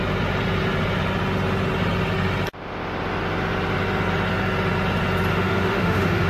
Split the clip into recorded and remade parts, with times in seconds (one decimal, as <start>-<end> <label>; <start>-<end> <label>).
0.0-5.3 recorded; 5.3-6.3 remade